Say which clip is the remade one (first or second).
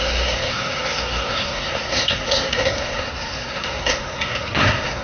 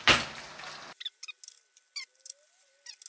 first